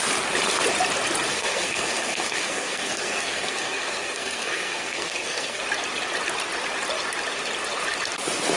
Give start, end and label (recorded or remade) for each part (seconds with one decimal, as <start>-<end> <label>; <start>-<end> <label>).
0.0-1.3 recorded; 1.3-5.6 remade; 5.6-8.6 recorded